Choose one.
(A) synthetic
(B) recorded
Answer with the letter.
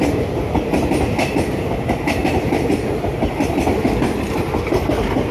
B